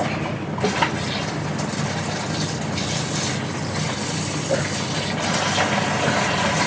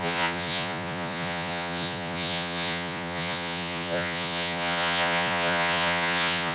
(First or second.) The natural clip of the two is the first